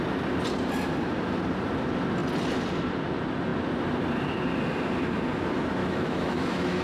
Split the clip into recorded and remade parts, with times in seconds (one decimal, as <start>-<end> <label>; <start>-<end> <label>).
0.0-5.8 recorded; 5.8-6.8 remade